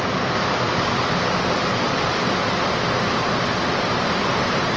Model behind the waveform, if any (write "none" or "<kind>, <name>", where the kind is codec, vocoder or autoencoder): none